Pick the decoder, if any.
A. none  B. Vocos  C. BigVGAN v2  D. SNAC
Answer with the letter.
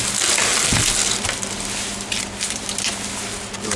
A